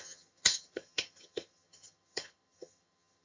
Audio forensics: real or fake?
fake